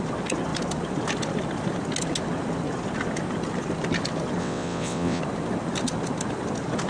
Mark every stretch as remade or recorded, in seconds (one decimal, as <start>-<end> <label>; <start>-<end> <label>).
0.0-4.4 recorded; 4.4-5.2 remade; 5.2-6.9 recorded